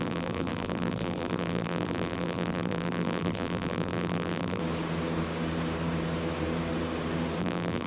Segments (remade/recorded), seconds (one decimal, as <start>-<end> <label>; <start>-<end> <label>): 0.0-4.6 remade; 4.6-7.4 recorded; 7.4-7.9 remade